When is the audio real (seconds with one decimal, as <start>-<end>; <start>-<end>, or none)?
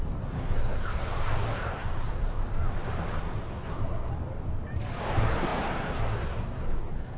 2.4-3.2; 4.1-5.0